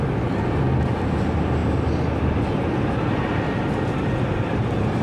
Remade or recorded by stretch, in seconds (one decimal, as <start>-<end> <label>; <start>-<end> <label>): 0.0-1.6 remade; 1.6-2.2 recorded; 2.2-2.6 remade; 2.6-3.2 recorded; 3.2-5.0 remade